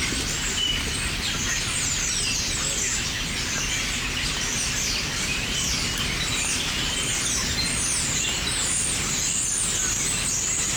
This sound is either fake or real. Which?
real